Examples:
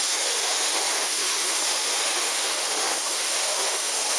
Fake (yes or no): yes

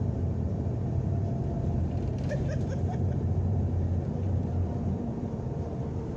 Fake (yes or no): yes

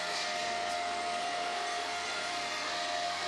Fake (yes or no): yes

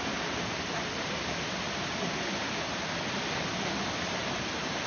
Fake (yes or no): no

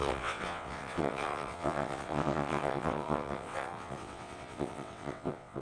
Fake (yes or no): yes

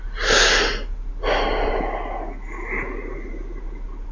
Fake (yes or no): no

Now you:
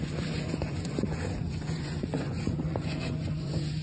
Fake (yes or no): yes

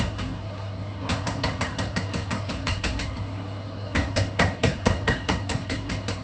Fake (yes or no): yes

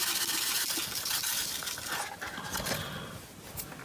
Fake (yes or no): no